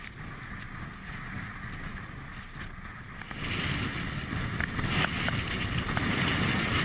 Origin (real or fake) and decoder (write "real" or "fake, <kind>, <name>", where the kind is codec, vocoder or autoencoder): real